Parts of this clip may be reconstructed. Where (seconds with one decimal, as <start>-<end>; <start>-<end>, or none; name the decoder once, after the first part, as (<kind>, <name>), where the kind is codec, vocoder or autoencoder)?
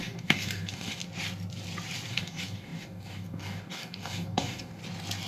0.0-1.0 (codec, DAC); 2.1-4.8